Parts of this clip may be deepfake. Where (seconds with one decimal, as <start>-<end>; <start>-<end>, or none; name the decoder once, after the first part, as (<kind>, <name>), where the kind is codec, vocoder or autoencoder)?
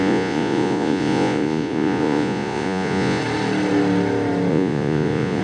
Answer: 0.0-3.2 (vocoder, Vocos); 4.5-5.4